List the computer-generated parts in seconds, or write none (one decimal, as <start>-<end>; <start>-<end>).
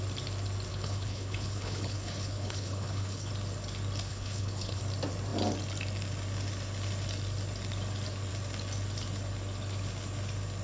0.7-3.3; 4.1-4.8